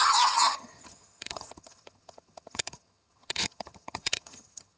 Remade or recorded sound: remade